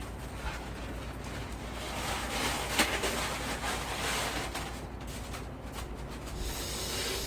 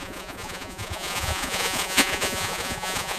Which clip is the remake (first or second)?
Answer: second